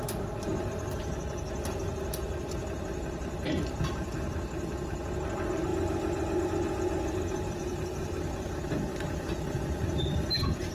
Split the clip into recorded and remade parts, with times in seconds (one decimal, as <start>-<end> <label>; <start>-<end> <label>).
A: 0.0-10.7 recorded